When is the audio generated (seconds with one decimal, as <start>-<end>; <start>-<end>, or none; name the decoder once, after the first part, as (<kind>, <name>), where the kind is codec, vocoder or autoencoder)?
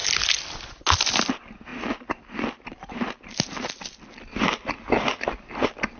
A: none